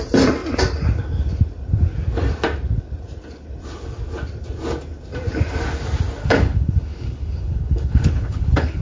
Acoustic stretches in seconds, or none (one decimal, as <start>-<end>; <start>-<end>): 0.0-6.2